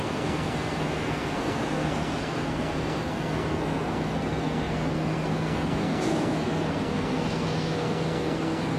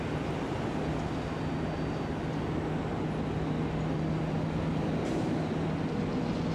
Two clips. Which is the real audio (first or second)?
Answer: second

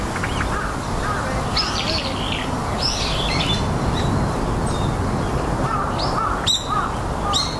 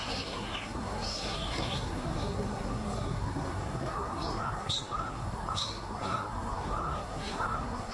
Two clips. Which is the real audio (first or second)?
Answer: first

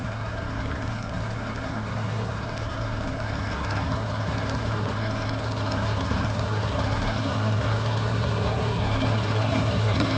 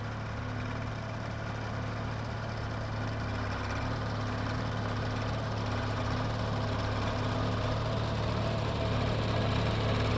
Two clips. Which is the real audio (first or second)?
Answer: second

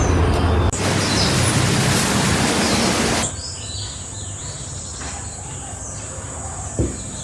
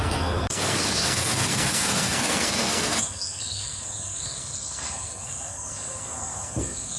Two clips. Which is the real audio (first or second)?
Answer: first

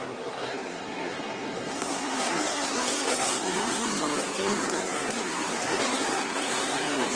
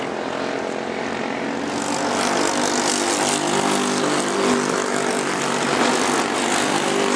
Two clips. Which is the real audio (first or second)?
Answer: second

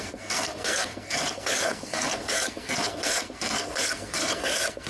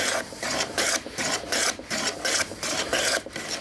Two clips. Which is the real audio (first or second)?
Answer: second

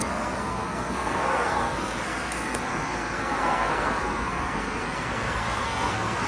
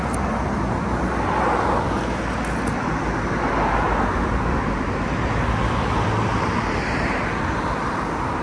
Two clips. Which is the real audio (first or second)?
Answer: second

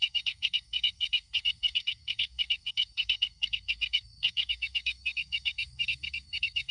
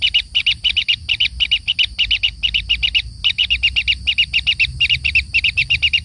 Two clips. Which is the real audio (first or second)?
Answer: second